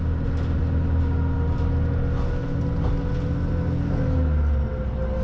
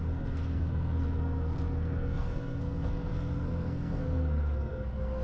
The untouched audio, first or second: first